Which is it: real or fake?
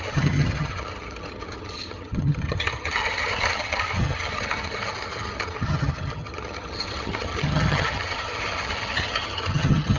fake